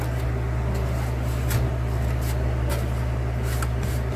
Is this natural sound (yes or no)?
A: yes